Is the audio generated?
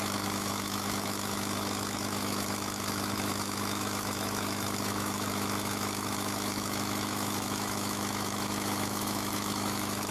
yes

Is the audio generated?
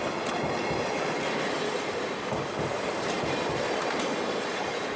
no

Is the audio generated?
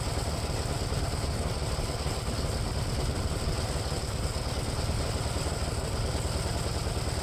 no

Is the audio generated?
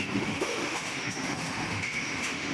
yes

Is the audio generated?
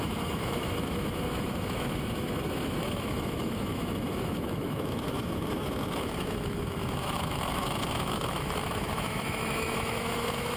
yes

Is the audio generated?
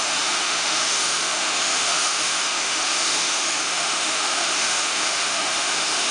yes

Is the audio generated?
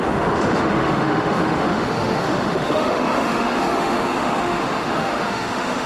yes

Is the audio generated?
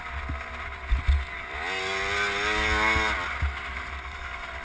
no